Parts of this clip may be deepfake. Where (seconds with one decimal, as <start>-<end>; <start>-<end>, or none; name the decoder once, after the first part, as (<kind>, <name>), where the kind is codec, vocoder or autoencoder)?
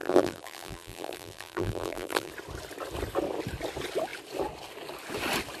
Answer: 0.0-2.3 (vocoder, BigVGAN v2)